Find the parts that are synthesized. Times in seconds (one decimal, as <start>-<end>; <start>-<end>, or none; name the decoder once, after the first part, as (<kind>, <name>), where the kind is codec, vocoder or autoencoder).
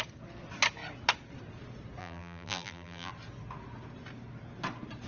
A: 2.0-3.1 (vocoder, BigVGAN v2)